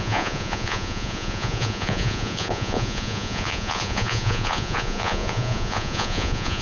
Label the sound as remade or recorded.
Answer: remade